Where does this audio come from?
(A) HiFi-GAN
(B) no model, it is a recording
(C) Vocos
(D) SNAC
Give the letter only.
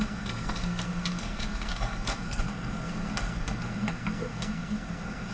D